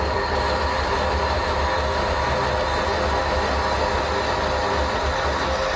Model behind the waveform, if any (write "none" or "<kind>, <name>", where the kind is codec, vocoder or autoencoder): none